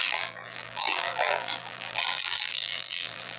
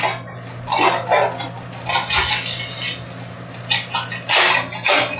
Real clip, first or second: second